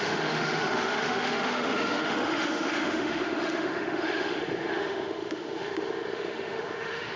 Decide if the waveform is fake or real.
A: fake